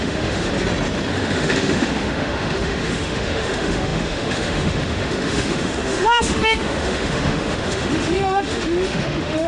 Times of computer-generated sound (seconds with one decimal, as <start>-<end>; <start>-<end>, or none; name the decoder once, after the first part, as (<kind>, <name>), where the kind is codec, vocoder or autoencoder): 0.0-0.5 (autoencoder, DAC-VAE); 1.1-9.5